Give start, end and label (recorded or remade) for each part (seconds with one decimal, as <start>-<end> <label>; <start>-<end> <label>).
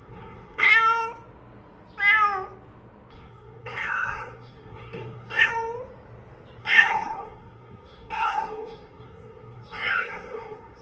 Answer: 0.0-0.7 remade; 0.7-3.1 recorded; 3.1-5.5 remade; 5.5-6.6 recorded; 6.6-10.8 remade